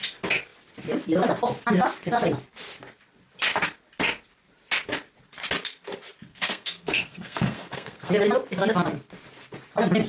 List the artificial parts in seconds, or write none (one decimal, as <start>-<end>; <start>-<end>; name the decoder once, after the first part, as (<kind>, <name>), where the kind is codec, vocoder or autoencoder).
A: 6.3-8.1 (codec, SNAC)